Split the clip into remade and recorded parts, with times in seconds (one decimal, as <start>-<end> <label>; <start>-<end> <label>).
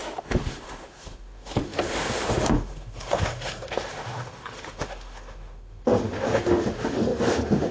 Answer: 0.0-7.7 remade